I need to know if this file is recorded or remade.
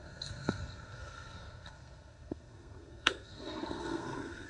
remade